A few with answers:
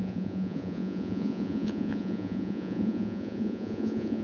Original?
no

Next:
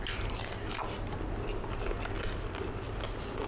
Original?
yes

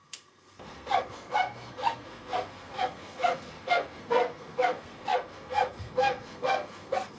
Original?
no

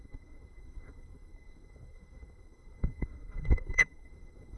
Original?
no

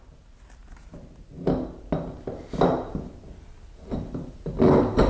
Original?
yes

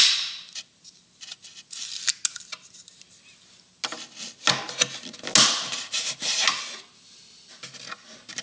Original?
yes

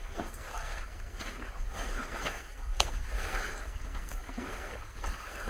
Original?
no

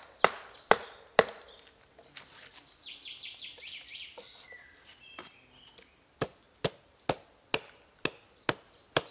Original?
yes